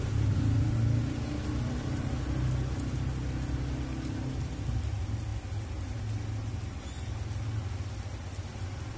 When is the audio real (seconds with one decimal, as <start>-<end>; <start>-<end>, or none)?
0.0-9.0